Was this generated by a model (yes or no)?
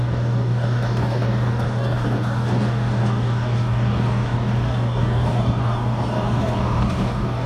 yes